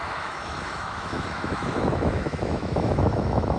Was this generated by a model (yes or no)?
yes